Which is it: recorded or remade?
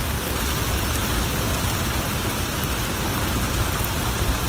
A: recorded